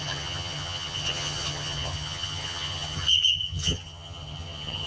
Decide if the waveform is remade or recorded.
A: remade